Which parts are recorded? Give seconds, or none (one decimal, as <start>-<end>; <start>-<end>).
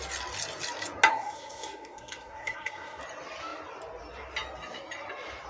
0.0-1.1; 3.0-5.5